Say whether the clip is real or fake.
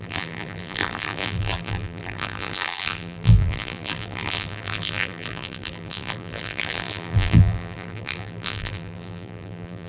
fake